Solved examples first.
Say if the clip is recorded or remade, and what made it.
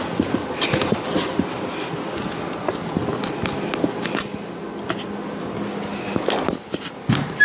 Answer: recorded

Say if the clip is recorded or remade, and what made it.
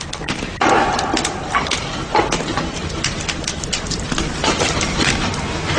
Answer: recorded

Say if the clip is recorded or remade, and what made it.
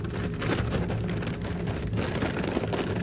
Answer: recorded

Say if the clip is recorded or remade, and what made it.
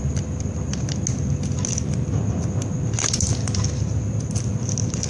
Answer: recorded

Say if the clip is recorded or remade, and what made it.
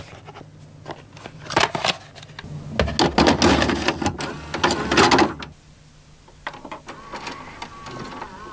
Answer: recorded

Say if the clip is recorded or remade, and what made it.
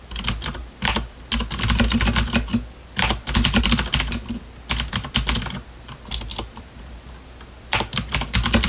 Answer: recorded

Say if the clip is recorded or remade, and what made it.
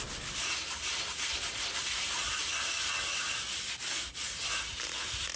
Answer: recorded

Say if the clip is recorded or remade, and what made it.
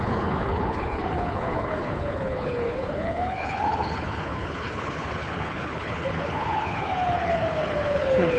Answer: remade, codec, HILCodec